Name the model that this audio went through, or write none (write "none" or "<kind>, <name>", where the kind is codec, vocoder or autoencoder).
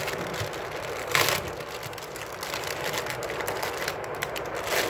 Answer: none